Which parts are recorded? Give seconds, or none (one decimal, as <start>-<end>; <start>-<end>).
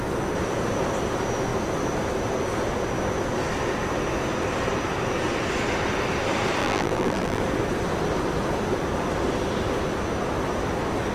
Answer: 0.0-6.6; 7.4-11.1